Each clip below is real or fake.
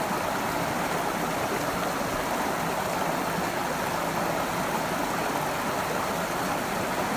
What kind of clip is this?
real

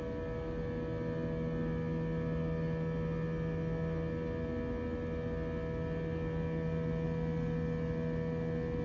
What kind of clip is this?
real